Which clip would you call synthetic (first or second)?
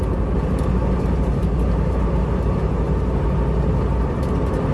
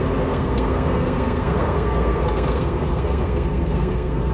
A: second